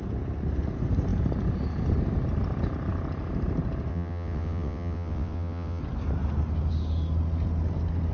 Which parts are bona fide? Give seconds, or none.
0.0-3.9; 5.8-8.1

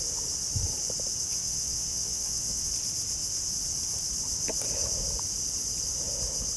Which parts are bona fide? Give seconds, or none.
0.0-1.3; 2.7-6.6

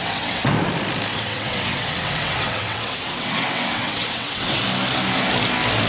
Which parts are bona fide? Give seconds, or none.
0.5-1.1; 4.6-5.9

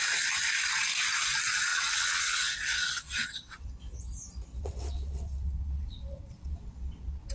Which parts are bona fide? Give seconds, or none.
0.0-1.7; 3.7-4.6

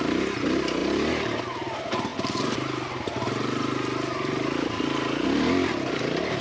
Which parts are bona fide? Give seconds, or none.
0.0-6.4

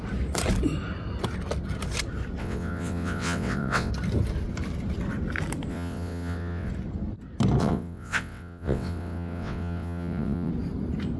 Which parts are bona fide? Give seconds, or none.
0.0-2.4; 3.9-5.7; 6.7-7.6; 10.5-11.2

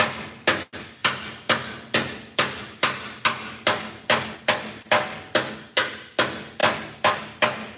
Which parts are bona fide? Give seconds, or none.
0.0-7.8

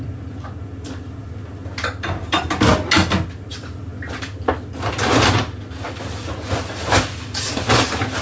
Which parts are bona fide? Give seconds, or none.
0.0-8.2